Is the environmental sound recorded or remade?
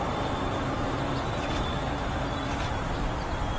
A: remade